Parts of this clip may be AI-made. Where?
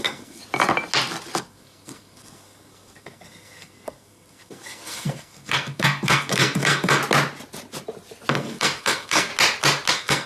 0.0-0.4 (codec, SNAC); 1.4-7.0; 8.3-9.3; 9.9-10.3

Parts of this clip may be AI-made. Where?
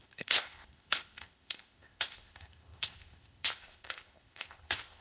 0.0-5.0 (codec, ZipCodec)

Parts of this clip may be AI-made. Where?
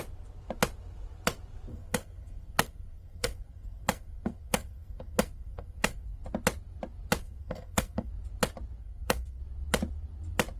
1.7-6.2 (codec, SNAC); 7.2-8.1; 8.8-9.4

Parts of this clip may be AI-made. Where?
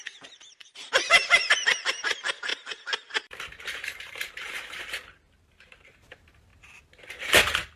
0.0-6.5 (vocoder, BigVGAN v2)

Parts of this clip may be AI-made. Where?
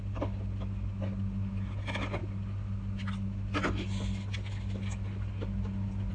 none